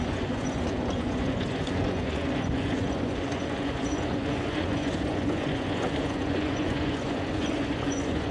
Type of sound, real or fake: fake